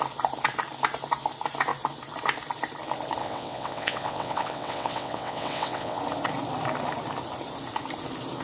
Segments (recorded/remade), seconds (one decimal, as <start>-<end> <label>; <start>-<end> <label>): 0.0-3.2 recorded; 3.2-6.0 remade; 6.0-8.4 recorded